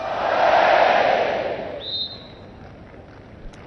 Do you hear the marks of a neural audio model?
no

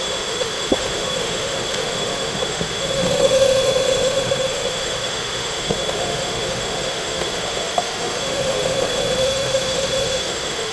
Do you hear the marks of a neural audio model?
yes